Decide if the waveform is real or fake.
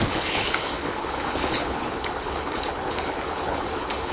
fake